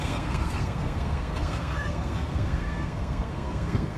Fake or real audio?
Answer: fake